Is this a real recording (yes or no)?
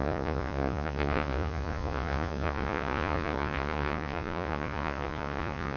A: no